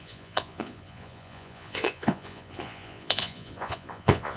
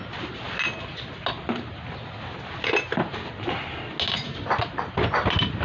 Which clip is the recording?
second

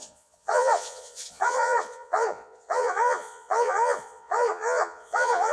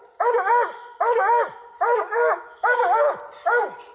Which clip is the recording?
second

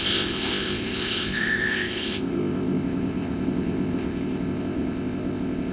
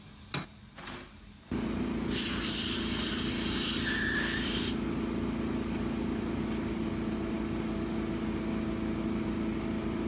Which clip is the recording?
second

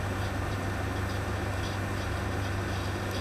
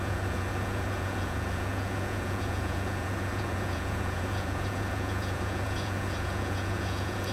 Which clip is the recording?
first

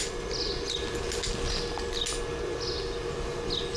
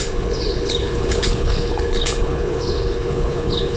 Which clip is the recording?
first